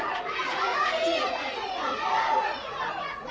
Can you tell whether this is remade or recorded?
remade